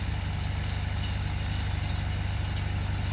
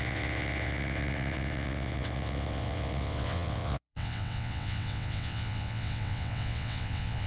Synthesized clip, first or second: second